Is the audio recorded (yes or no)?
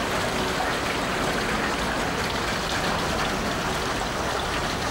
yes